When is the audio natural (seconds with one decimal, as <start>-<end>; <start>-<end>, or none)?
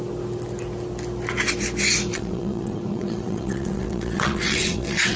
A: 0.0-2.1